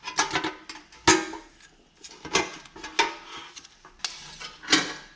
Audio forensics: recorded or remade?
recorded